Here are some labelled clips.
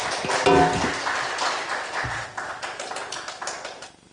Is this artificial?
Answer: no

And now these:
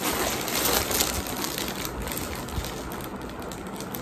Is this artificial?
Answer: no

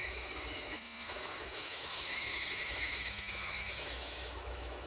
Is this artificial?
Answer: yes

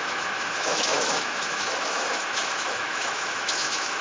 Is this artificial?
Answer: yes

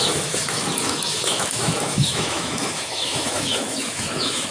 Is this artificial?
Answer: yes